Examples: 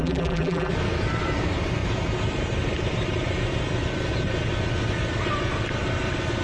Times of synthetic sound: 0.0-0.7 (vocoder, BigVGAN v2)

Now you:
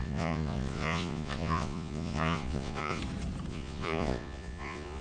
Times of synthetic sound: 0.0-3.0 (vocoder, Vocos); 3.5-5.0